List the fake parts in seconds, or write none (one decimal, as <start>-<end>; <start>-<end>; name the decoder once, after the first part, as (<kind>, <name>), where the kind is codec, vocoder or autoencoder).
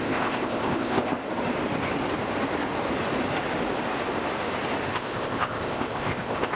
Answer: 0.0-1.2 (codec, ZipCodec); 4.9-6.6